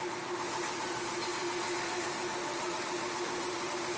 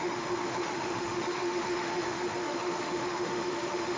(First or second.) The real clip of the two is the first